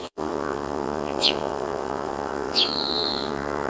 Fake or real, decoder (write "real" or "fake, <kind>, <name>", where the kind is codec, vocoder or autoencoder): fake, vocoder, WaveNeXt